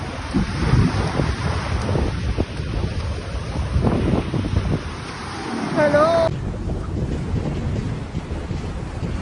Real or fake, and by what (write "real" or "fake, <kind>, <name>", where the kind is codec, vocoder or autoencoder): real